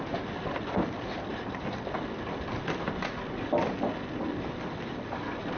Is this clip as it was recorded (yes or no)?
yes